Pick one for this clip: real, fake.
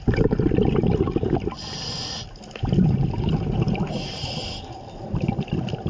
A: real